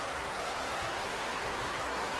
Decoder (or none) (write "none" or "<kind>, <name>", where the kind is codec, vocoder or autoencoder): codec, SNAC